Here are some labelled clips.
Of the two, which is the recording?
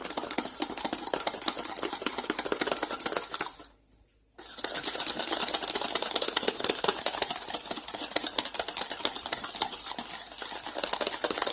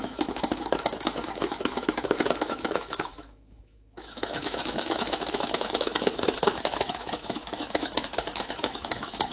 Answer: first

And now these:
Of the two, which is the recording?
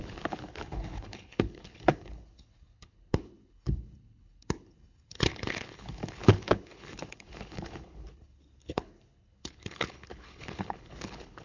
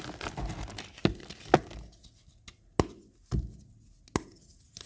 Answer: second